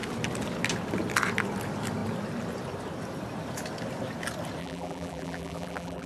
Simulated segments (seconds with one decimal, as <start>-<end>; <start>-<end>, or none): 4.6-6.1